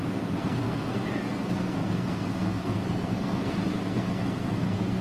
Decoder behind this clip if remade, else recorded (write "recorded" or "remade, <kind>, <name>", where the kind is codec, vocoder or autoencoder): remade, codec, SNAC